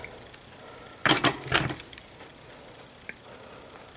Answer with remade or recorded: recorded